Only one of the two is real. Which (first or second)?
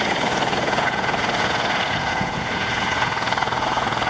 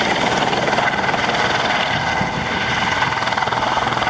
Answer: second